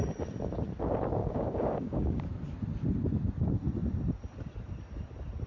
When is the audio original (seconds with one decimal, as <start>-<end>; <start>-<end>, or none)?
0.0-1.2; 2.2-5.5